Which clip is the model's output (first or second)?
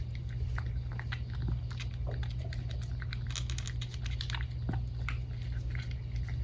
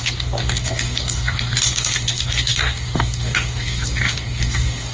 second